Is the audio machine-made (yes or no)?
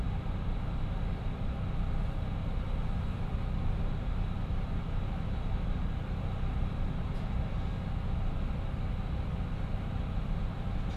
no